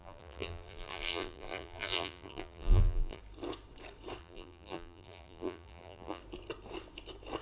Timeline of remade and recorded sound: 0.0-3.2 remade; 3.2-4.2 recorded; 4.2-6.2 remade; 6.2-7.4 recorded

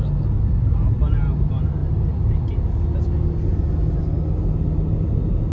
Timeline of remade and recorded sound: 0.0-5.5 recorded